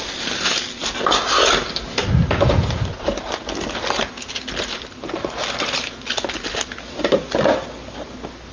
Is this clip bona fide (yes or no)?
yes